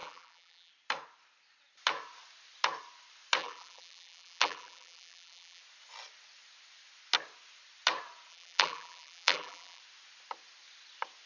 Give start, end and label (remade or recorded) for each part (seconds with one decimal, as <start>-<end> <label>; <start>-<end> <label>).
0.0-0.7 remade; 0.7-3.4 recorded; 3.4-5.6 remade; 5.6-8.3 recorded; 8.3-9.8 remade; 9.8-11.3 recorded